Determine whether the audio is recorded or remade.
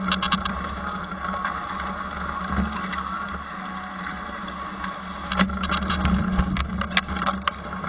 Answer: recorded